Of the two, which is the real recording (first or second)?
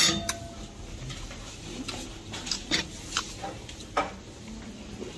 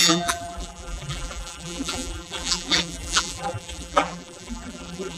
first